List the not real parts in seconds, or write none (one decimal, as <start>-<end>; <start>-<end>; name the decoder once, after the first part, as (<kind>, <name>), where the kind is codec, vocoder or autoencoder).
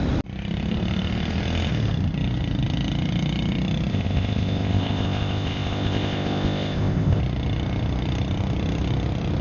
3.9-7.2 (codec, ZipCodec)